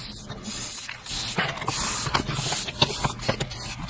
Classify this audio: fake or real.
real